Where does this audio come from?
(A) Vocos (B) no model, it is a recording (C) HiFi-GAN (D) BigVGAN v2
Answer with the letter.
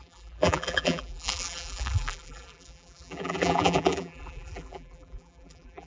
D